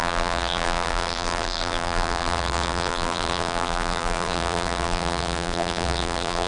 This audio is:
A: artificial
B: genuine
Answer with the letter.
A